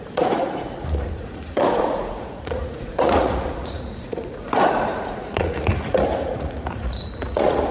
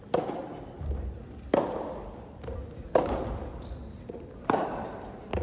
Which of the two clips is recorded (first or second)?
second